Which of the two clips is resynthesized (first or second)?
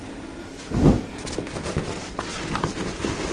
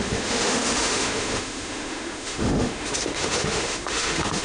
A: second